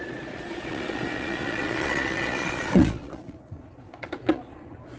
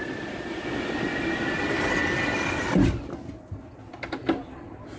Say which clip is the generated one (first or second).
first